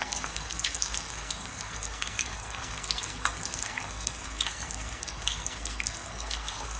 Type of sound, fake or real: fake